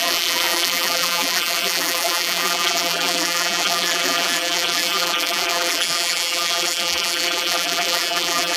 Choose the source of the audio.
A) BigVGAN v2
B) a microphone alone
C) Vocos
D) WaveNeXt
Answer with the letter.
A